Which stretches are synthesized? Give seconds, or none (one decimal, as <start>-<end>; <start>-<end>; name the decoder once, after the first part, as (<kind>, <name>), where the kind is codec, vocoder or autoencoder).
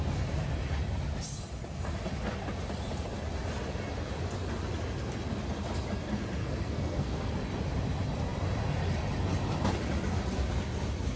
6.4-7.3 (codec, SNAC)